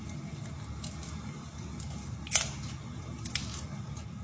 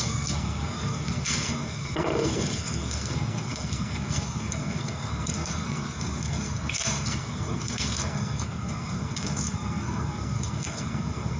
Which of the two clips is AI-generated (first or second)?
second